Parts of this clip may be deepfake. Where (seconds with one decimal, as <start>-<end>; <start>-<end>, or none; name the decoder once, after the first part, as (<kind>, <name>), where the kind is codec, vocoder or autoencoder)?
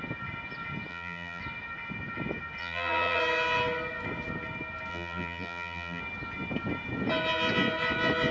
0.9-1.4 (vocoder, BigVGAN v2); 2.6-3.2; 4.9-6.0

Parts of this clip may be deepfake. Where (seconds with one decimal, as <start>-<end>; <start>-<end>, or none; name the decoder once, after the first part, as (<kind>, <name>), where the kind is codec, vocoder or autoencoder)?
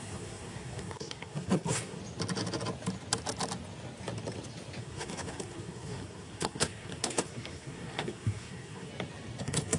0.0-2.0 (codec, SNAC); 4.8-8.9; 9.4-9.8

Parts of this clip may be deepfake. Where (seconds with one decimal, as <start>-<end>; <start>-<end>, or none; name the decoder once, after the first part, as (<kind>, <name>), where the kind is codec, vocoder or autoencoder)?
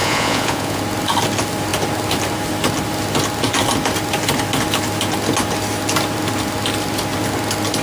0.0-0.8 (vocoder, Vocos)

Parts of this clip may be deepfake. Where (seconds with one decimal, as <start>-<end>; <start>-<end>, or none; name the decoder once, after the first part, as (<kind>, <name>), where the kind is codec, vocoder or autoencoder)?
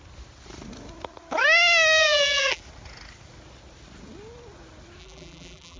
2.0-2.6 (vocoder, BigVGAN v2); 5.0-5.8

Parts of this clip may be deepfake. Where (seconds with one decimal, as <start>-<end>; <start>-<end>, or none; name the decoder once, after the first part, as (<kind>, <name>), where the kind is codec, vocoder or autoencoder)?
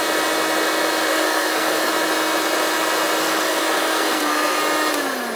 1.1-1.9 (codec, SNAC); 3.2-4.6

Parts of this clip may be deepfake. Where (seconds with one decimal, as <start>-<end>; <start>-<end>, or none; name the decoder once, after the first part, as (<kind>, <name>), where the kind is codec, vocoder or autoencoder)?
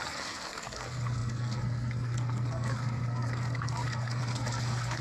0.0-5.0 (codec, SNAC)